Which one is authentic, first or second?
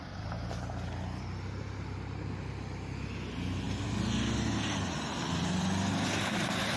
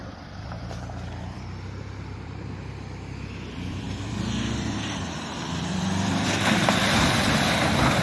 first